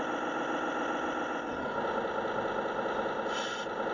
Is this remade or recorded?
recorded